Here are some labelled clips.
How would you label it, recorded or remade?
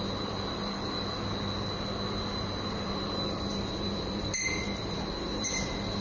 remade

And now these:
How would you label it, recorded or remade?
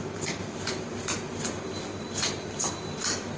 recorded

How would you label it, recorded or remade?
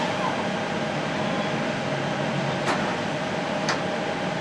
recorded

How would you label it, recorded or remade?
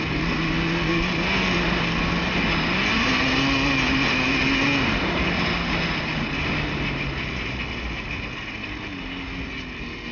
recorded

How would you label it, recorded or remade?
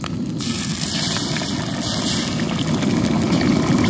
recorded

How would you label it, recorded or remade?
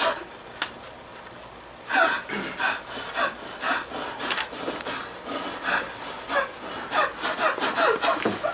recorded